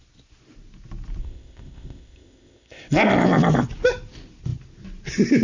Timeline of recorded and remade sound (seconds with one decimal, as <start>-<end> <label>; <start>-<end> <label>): 0.0-1.2 recorded; 1.2-3.1 remade; 3.1-5.4 recorded